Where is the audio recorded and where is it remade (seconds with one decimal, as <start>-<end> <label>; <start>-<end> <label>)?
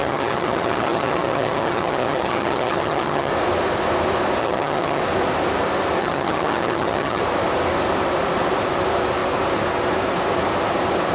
0.0-3.3 remade; 3.3-4.4 recorded; 4.4-5.0 remade; 5.0-6.0 recorded; 6.0-7.2 remade; 7.2-11.1 recorded